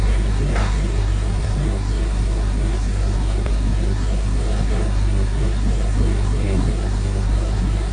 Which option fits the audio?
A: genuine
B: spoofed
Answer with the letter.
B